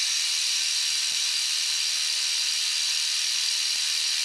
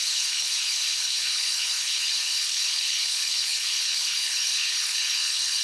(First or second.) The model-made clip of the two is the second